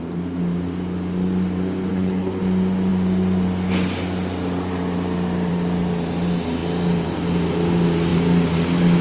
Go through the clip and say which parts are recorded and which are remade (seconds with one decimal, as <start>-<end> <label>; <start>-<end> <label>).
0.0-1.9 recorded; 1.9-2.4 remade; 2.4-9.0 recorded